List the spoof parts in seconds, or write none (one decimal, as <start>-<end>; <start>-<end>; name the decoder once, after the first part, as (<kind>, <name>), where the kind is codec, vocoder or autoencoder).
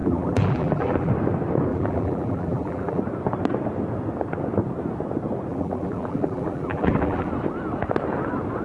0.0-1.1 (vocoder, BigVGAN v2); 1.7-3.0; 5.5-7.3